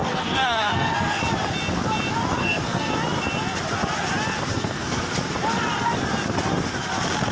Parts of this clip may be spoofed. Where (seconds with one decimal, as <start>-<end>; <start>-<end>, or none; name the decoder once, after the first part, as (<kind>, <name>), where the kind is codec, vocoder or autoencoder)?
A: 0.0-1.2 (codec, SNAC); 2.4-2.9; 4.5-5.1